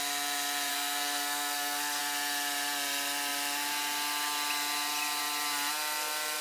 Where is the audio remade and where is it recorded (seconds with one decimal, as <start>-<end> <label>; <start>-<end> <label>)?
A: 0.0-0.7 recorded; 0.7-2.0 remade; 2.0-6.4 recorded